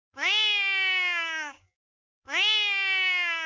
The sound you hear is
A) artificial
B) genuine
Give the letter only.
A